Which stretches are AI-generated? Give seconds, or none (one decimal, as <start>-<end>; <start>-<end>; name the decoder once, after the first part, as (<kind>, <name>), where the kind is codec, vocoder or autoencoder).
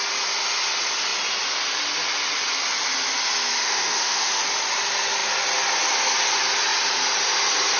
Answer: 3.6-4.4 (autoencoder, DAC-VAE)